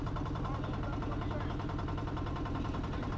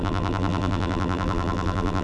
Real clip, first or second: first